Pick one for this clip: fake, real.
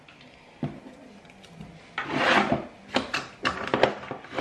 real